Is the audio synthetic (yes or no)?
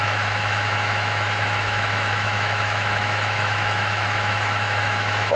yes